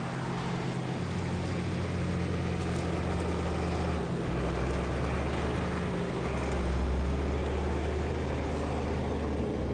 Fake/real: real